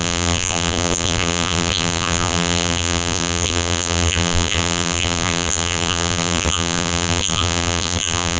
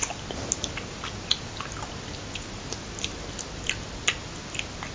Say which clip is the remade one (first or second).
first